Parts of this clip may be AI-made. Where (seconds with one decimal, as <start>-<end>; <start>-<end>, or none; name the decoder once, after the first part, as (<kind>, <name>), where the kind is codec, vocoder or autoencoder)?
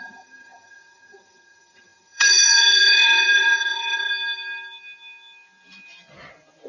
0.0-4.1 (vocoder, HiFi-GAN)